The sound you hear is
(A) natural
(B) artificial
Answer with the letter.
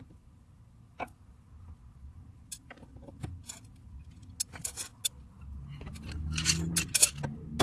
A